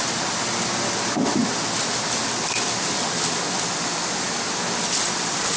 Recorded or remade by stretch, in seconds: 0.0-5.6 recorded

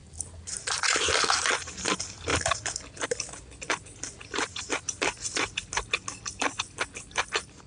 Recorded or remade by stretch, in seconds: 0.0-7.7 recorded